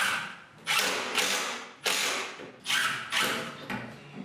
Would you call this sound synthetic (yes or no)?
no